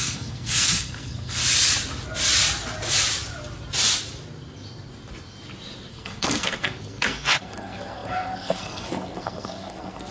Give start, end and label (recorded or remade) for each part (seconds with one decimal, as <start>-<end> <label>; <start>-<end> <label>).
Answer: 0.0-1.4 remade; 1.4-5.9 recorded; 5.9-10.1 remade